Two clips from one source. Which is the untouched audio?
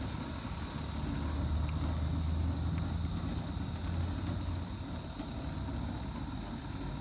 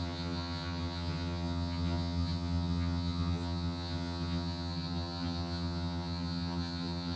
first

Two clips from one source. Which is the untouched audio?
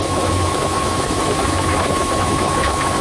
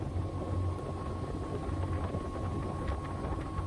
second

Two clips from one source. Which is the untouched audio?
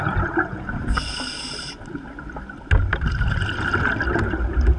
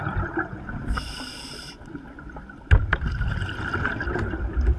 first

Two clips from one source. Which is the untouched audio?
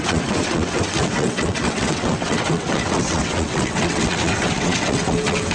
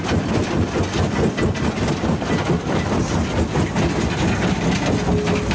second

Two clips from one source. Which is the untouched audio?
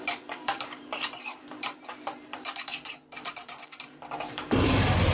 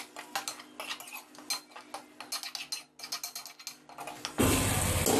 second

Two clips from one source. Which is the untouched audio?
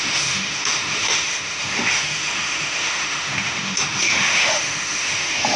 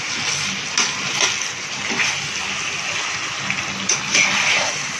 second